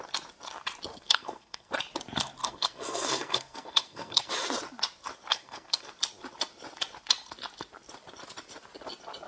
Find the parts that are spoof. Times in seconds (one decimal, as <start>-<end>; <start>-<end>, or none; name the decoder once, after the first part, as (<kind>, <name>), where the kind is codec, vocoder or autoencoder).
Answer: 0.9-1.7 (codec, SNAC); 2.4-4.3; 5.3-5.9